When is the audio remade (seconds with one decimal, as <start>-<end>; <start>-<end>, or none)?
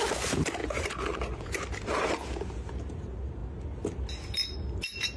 0.6-1.5